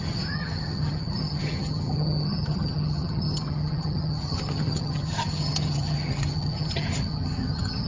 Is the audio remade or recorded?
remade